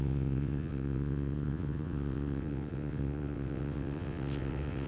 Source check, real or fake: fake